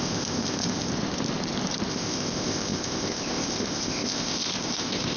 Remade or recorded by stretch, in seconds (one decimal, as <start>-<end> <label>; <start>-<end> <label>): 0.0-0.9 remade; 0.9-1.9 recorded; 1.9-5.2 remade